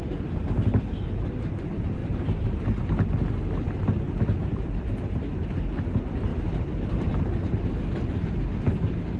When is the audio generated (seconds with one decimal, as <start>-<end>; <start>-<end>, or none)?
2.0-2.8; 6.3-7.7